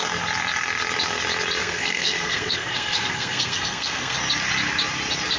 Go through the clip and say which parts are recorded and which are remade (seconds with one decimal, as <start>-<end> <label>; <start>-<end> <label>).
0.0-1.6 recorded; 1.6-4.2 remade; 4.2-5.4 recorded